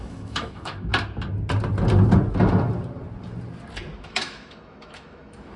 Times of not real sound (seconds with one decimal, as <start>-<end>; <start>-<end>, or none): 0.0-0.9; 4.0-5.6